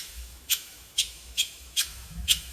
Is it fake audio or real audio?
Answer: fake